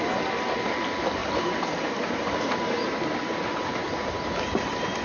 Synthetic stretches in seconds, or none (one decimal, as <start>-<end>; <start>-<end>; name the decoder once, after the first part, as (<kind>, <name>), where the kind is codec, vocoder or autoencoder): 1.2-2.5 (vocoder, BigVGAN v2)